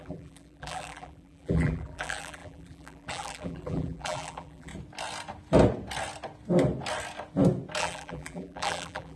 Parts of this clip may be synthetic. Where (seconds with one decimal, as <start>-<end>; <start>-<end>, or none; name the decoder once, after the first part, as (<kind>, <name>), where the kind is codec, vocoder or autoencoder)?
0.0-4.7 (vocoder, BigVGAN v2); 7.8-9.2